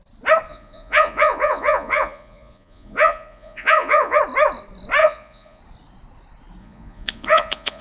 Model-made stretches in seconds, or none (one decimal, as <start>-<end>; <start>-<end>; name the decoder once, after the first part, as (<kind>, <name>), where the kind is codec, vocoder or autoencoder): 0.5-4.2 (vocoder, Vocos); 5.0-5.6; 6.6-7.8